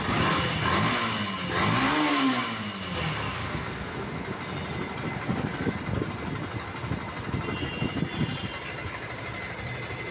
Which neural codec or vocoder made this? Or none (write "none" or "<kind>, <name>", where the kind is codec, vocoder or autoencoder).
none